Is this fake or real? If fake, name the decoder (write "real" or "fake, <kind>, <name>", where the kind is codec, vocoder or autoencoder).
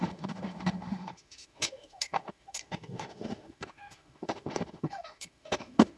fake, autoencoder, DAC-VAE